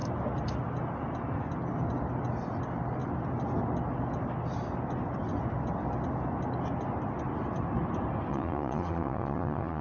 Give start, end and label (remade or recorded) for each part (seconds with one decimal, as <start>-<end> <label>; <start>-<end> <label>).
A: 0.0-8.3 recorded; 8.3-9.8 remade